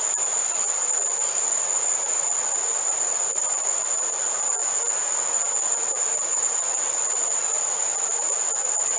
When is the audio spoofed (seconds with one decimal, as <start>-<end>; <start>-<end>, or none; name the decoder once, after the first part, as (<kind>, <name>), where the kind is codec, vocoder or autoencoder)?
0.0-0.4 (vocoder, Vocos); 1.4-2.7; 3.3-4.6; 5.5-7.9; 8.6-9.0